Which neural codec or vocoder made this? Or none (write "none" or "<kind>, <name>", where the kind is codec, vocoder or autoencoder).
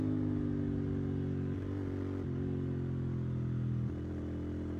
none